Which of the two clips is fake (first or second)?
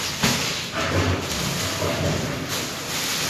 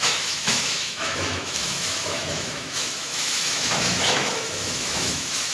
second